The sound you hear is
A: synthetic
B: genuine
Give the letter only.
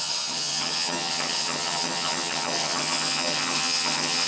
A